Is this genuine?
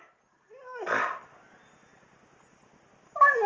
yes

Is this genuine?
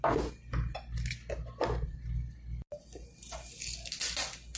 yes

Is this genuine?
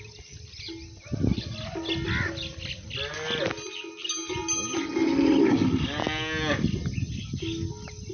yes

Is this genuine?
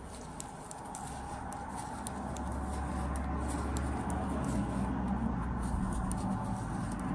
yes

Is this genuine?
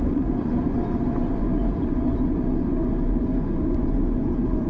no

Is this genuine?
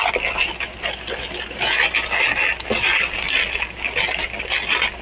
yes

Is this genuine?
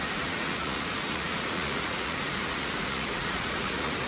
no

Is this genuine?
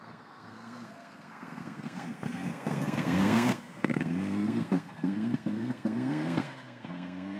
no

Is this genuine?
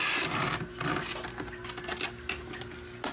yes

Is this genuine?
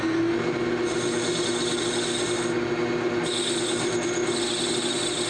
yes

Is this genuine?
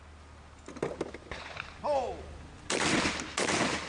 yes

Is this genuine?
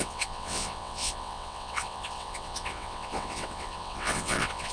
no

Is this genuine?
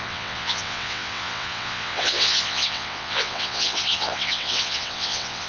no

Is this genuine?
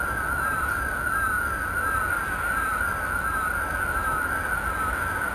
yes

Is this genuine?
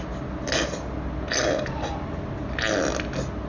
yes